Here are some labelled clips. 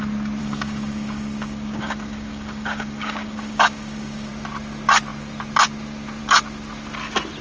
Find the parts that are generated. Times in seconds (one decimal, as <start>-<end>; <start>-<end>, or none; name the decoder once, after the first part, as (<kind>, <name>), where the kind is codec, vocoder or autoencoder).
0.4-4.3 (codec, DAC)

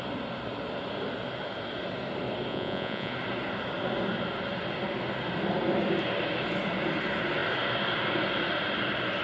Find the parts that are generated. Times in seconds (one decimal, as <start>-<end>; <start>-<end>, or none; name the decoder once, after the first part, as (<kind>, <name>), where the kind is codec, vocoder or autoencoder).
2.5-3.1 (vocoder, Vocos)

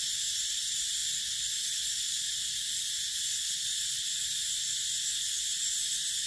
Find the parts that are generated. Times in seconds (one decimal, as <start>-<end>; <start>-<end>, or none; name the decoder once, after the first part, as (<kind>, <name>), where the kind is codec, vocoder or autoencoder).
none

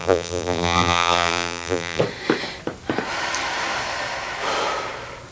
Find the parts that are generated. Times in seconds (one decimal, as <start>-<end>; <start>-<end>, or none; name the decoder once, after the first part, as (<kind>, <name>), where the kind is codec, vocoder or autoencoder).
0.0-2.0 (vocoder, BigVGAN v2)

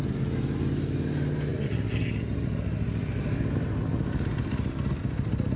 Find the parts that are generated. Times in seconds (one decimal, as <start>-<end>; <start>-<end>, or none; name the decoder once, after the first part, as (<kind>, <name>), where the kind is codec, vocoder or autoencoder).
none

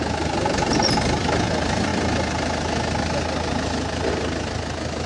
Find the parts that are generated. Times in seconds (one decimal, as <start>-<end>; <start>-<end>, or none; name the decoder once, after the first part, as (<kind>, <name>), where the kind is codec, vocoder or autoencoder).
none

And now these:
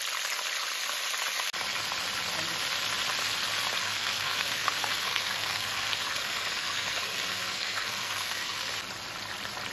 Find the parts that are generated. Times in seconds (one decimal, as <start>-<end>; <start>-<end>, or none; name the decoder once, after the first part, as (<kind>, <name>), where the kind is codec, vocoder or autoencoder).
3.8-8.7 (codec, SNAC)

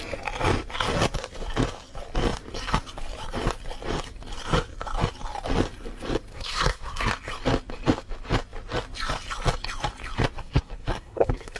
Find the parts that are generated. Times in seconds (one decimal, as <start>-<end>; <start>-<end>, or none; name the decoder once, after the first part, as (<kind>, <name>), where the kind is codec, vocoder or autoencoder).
6.3-7.1 (codec, SNAC); 10.4-11.6